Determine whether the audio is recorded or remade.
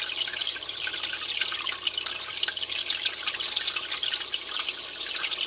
recorded